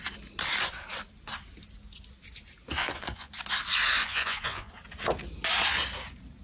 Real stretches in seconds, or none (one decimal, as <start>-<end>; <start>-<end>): 0.0-2.8; 3.3-4.0; 4.7-6.4